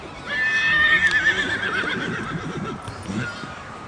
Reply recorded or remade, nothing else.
recorded